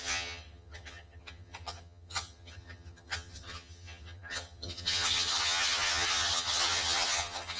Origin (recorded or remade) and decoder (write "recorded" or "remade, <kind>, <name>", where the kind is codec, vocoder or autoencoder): remade, vocoder, HiFi-GAN